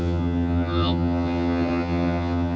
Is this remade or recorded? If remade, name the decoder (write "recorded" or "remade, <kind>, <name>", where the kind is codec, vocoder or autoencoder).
remade, vocoder, HiFi-GAN